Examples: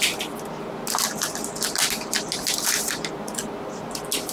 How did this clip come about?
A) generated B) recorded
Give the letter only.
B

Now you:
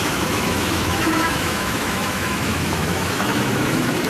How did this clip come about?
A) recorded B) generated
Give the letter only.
B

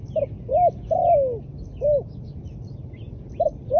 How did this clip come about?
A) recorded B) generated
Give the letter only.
A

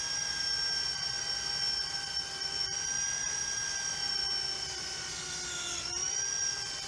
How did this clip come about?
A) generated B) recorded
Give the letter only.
B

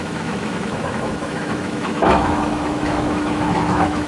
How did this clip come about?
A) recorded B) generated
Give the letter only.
B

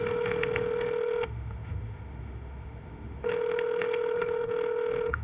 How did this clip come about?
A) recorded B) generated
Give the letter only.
B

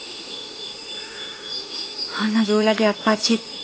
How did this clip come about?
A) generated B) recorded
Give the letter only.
A